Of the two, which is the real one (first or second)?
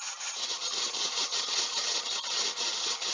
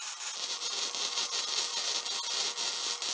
second